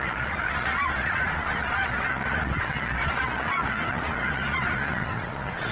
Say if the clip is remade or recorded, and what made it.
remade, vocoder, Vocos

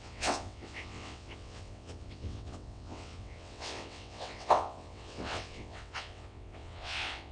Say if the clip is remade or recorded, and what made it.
remade, vocoder, WaveNeXt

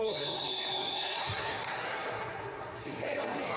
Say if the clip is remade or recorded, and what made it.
remade, codec, SNAC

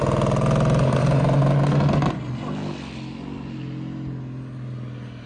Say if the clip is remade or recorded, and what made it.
recorded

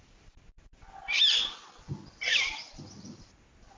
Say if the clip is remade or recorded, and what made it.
recorded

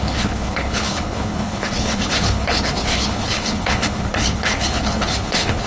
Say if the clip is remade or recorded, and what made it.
remade, codec, HILCodec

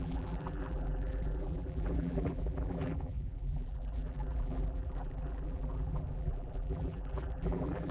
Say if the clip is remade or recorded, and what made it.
remade, vocoder, BigVGAN v2